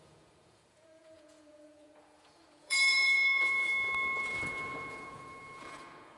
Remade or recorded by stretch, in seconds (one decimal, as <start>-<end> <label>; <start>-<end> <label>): 0.0-3.7 remade; 3.7-4.2 recorded; 4.2-6.2 remade